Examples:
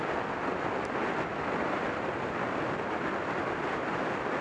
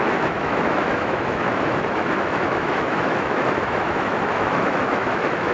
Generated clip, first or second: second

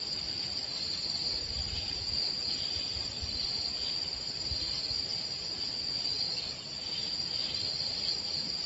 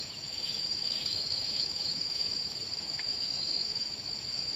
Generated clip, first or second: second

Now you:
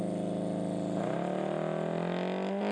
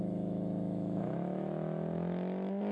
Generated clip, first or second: second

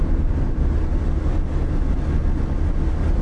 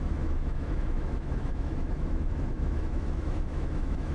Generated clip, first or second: second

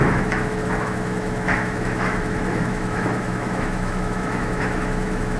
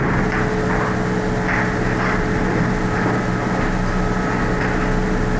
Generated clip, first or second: first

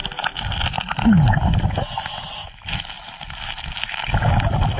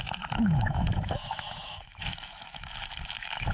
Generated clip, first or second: second